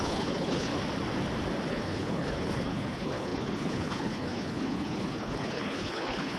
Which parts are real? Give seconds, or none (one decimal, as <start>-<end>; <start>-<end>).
0.7-1.7